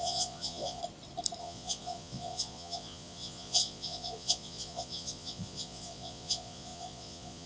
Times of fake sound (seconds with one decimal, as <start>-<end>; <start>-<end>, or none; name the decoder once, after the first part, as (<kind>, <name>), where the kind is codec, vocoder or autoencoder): 0.0-0.8 (vocoder, Vocos); 1.4-7.5